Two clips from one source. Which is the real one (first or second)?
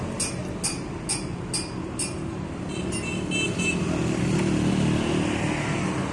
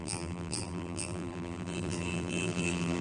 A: first